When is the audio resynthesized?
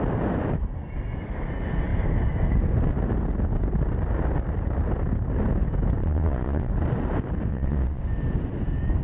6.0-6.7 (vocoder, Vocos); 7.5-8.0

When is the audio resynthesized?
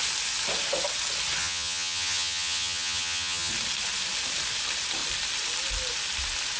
1.4-3.5 (vocoder, HiFi-GAN)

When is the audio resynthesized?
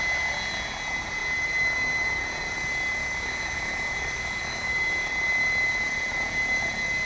3.0-5.1 (autoencoder, DAC-VAE)